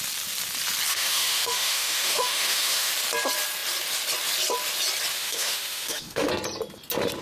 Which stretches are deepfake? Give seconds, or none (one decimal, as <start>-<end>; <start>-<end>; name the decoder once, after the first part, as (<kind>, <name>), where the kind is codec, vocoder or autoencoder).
0.9-2.9 (autoencoder, DAC-VAE); 5.1-6.3